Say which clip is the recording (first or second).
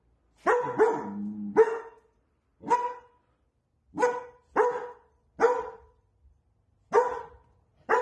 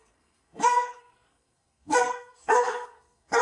first